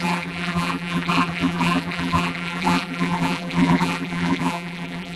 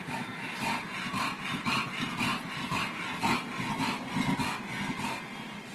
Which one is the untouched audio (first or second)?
second